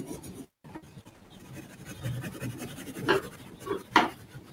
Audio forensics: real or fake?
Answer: fake